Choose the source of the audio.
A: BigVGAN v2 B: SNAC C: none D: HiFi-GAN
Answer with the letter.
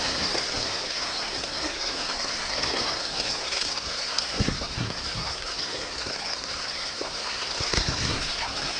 B